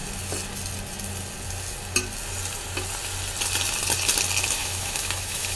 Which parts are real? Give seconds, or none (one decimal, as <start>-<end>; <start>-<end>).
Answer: 0.0-4.6

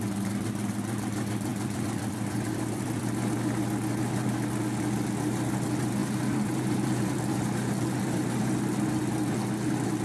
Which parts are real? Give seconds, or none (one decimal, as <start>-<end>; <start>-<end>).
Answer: 0.0-1.5; 3.0-6.0; 8.4-10.0

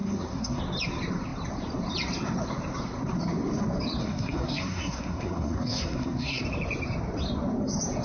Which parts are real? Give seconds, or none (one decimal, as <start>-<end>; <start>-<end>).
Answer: 0.6-4.0; 6.4-8.0

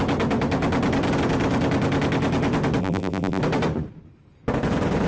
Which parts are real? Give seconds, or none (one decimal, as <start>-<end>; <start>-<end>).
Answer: 0.0-2.8; 3.4-5.1

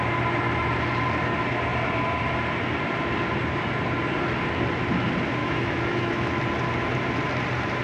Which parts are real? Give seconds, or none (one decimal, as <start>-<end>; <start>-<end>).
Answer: 0.0-5.4; 6.3-7.8

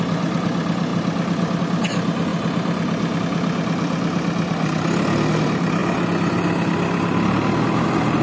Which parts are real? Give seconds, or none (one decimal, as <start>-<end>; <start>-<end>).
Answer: 0.0-8.2

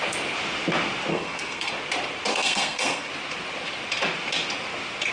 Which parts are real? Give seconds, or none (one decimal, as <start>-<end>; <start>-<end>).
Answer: 0.0-1.1; 1.7-2.3; 3.1-5.1